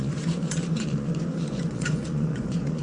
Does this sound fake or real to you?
fake